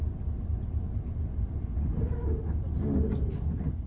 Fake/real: real